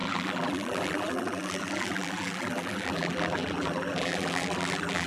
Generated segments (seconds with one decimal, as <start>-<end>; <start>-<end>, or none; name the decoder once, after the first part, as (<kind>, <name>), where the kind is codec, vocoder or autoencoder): 0.0-5.1 (vocoder, BigVGAN v2)